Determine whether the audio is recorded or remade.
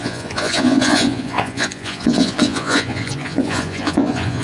remade